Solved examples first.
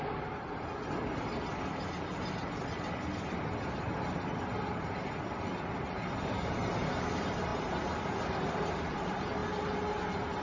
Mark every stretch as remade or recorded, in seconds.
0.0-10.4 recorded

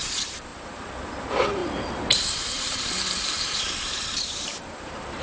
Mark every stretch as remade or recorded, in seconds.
0.0-0.5 remade; 0.5-1.2 recorded; 1.2-5.2 remade

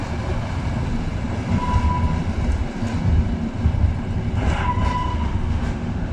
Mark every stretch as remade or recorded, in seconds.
0.0-5.1 recorded; 5.1-6.1 remade

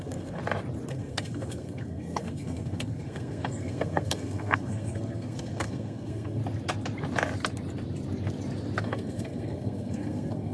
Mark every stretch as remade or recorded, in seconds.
0.0-0.4 remade; 0.4-0.9 recorded; 0.9-6.4 remade; 6.4-8.8 recorded; 8.8-10.5 remade

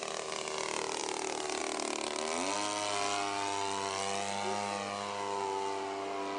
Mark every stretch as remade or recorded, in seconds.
0.0-6.4 recorded

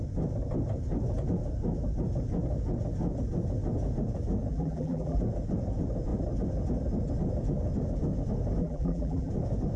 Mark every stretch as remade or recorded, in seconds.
0.0-4.5 recorded; 4.5-5.2 remade; 5.2-8.6 recorded; 8.6-9.3 remade; 9.3-9.8 recorded

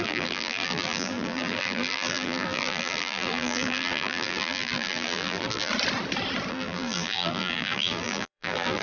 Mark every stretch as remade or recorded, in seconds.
0.0-5.7 remade; 5.7-6.5 recorded; 6.5-8.8 remade

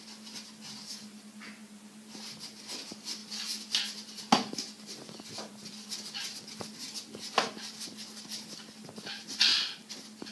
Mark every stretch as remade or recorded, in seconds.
0.0-10.3 recorded